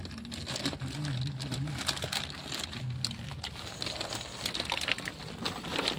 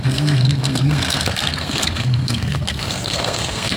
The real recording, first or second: first